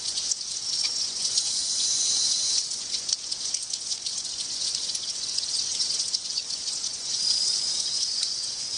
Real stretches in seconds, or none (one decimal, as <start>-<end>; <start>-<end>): none